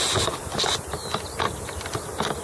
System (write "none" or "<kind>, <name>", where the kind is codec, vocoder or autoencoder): none